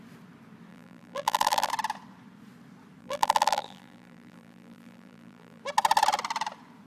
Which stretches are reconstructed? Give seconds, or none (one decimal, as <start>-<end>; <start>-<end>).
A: 0.7-1.7; 3.0-5.6